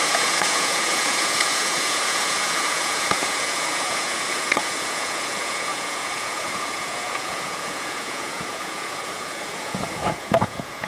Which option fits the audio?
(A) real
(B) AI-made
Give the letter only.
B